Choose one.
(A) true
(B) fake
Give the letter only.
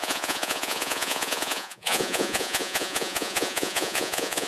B